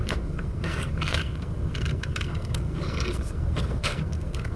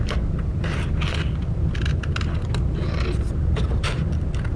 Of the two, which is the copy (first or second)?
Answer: first